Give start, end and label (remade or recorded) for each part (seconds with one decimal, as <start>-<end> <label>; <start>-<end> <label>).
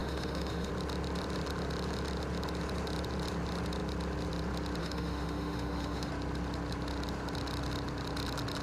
0.0-0.7 remade; 0.7-4.8 recorded; 4.8-6.1 remade; 6.1-8.6 recorded